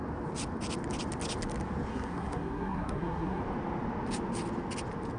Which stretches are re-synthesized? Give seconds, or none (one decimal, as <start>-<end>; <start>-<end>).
1.9-3.4